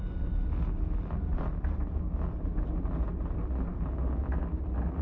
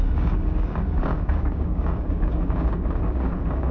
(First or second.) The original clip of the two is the first